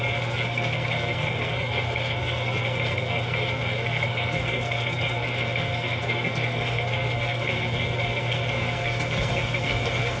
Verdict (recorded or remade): remade